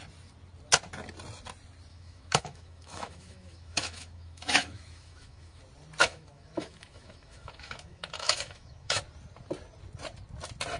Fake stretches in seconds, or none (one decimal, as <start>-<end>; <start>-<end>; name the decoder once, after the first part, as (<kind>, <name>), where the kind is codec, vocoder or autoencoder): 1.9-5.6 (autoencoder, DAC-VAE); 6.0-9.0